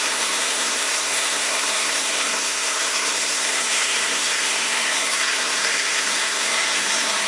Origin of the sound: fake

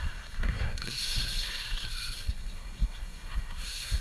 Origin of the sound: fake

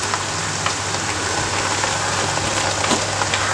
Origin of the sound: real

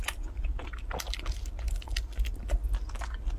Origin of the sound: real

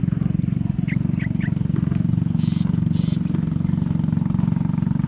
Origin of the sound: real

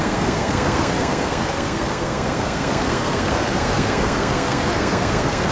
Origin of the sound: fake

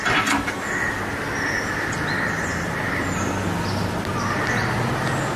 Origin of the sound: real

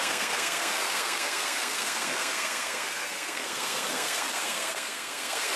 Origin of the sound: fake